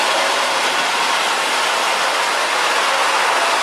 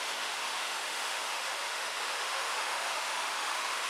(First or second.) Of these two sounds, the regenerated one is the second